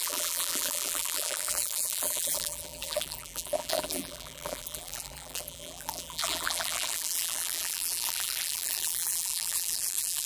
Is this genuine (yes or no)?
no